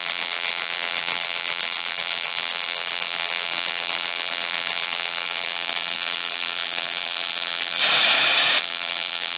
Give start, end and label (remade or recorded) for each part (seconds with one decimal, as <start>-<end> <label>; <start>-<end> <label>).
0.0-7.8 remade; 7.8-8.6 recorded; 8.6-9.4 remade